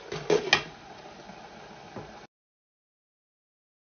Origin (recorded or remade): recorded